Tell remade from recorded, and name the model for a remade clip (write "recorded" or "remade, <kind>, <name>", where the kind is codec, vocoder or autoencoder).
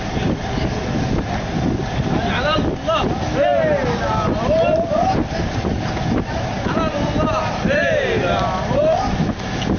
recorded